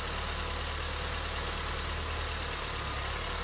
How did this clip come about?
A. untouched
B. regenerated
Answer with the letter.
A